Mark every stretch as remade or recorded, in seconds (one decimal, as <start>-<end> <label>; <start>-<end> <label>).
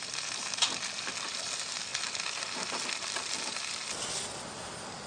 0.0-5.1 recorded